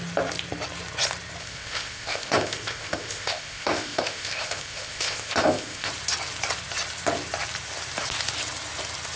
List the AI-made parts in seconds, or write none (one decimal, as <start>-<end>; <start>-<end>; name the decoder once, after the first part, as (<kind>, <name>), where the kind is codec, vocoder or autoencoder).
1.4-5.9 (codec, ZipCodec)